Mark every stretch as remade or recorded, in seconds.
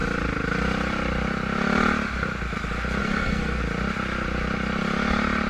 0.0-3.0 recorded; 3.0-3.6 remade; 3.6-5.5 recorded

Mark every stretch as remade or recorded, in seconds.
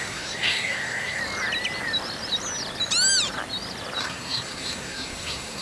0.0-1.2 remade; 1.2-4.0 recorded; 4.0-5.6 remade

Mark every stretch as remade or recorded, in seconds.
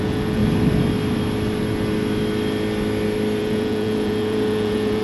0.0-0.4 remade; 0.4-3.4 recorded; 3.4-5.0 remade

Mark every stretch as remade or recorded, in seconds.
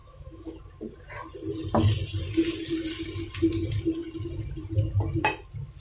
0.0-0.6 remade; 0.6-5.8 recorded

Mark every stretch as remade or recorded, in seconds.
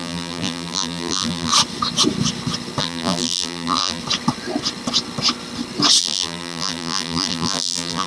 0.0-1.5 remade; 1.5-2.8 recorded; 2.8-4.0 remade; 4.0-6.0 recorded; 6.0-8.1 remade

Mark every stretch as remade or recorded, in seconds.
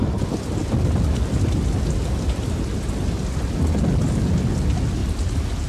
0.0-5.7 recorded